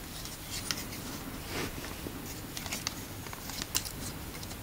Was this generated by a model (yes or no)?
no